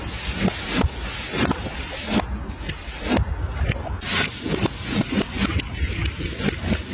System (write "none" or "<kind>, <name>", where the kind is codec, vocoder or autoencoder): none